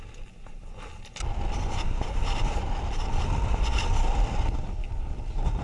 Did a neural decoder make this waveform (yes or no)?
no